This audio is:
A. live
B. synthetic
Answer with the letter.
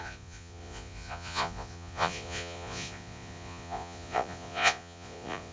B